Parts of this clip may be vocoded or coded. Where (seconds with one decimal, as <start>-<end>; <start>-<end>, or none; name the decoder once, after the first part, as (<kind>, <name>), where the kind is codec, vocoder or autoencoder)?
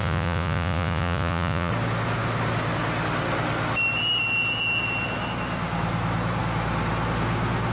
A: 0.0-1.7 (vocoder, Vocos)